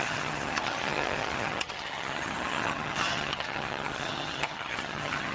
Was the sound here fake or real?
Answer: fake